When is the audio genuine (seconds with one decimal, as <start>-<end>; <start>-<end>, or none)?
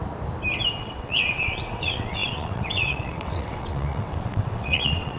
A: 0.0-0.8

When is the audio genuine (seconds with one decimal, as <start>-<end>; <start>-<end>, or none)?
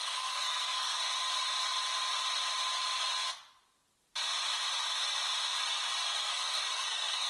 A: 1.1-6.1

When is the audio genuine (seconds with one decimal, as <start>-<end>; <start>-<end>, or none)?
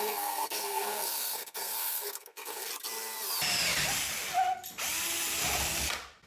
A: 2.7-6.3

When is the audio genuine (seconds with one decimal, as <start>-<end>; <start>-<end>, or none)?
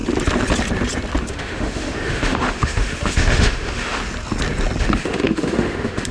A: 0.0-1.2; 4.0-4.8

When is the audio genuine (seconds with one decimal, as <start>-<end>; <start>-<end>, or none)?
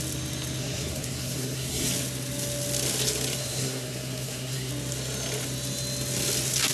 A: 0.0-0.6; 1.9-3.4; 4.7-6.7